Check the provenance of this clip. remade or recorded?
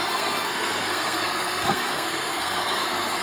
remade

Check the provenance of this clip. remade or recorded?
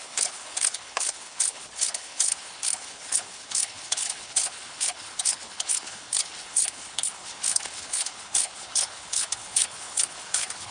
remade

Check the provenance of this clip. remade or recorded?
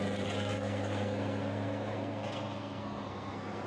remade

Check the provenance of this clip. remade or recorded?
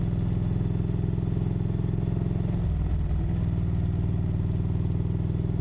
recorded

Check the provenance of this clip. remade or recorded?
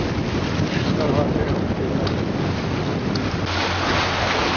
recorded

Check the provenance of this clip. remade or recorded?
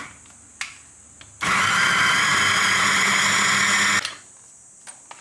recorded